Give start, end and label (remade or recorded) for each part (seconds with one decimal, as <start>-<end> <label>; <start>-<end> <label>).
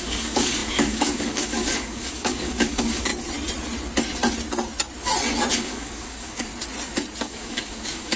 0.0-3.1 remade; 3.1-5.5 recorded; 5.5-6.5 remade; 6.5-7.2 recorded; 7.2-8.2 remade